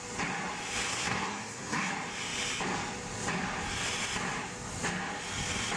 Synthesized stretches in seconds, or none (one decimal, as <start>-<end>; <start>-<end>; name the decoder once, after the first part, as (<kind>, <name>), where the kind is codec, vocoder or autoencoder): 0.9-1.9 (codec, SNAC)